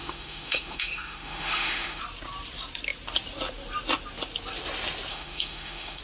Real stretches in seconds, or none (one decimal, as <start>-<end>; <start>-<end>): 2.0-5.1